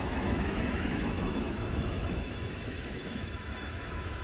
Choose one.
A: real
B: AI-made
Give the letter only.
B